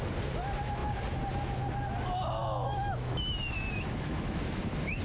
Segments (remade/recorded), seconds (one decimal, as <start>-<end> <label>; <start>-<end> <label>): 0.0-2.4 recorded; 2.4-4.6 remade; 4.6-5.0 recorded